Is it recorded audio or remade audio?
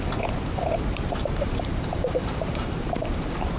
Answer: remade